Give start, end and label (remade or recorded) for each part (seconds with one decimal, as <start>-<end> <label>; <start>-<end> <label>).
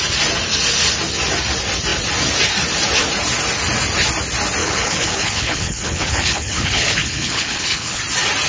0.0-4.6 recorded; 4.6-8.0 remade; 8.0-8.5 recorded